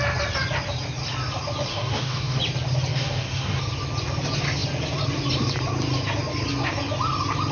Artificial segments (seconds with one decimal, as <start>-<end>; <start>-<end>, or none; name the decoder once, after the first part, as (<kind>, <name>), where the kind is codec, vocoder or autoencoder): 1.7-2.4 (codec, DAC); 2.9-3.6